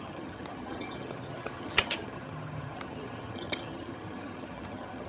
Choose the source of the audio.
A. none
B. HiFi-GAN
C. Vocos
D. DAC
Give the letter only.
B